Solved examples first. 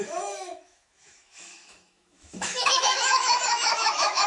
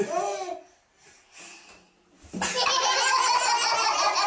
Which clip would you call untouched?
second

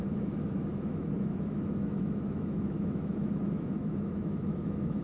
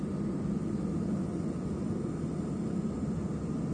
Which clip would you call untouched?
second